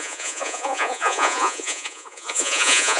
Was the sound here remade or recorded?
remade